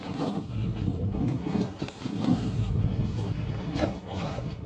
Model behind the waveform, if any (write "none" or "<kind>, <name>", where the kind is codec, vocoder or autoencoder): codec, SNAC